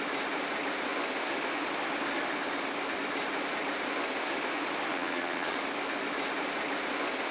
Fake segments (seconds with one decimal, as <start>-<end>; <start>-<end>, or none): 4.9-5.6